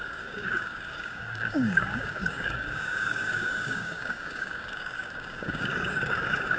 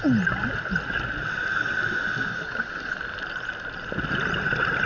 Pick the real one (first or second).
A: second